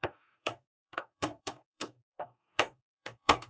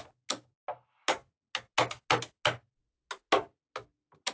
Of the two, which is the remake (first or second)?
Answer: first